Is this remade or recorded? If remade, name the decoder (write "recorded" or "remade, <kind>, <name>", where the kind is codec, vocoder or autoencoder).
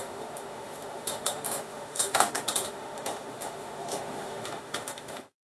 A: remade, autoencoder, DAC-VAE